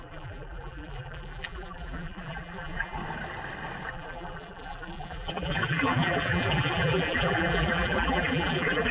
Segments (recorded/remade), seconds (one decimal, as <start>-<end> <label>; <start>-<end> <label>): 0.0-3.0 remade; 3.0-3.9 recorded; 3.9-8.9 remade